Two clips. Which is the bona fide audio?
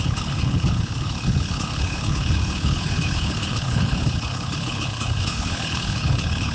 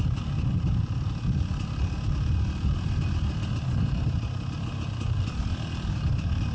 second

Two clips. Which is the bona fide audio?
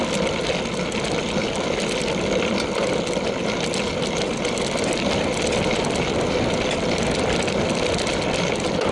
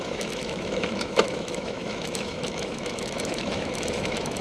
first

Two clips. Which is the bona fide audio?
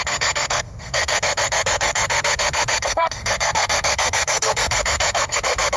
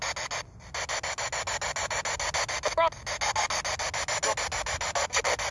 second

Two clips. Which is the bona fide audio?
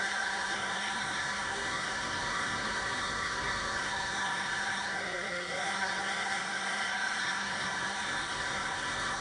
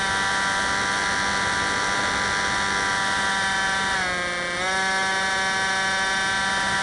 second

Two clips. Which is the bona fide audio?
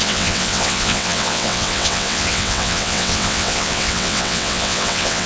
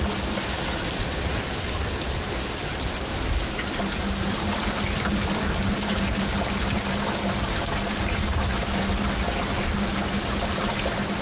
second